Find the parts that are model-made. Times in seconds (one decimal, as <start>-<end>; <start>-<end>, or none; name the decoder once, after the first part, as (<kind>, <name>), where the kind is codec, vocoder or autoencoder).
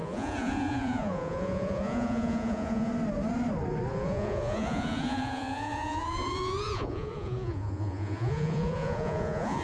0.0-2.9 (vocoder, Vocos); 3.9-9.6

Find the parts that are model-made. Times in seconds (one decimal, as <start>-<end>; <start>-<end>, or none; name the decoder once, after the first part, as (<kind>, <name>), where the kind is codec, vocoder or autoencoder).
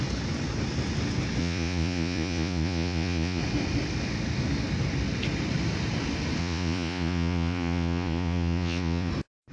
1.4-3.4 (vocoder, Vocos); 6.4-9.1